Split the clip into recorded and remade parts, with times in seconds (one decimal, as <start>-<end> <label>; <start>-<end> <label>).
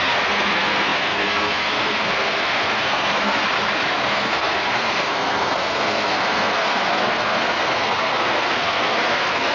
0.0-3.4 remade; 3.4-4.1 recorded; 4.1-9.5 remade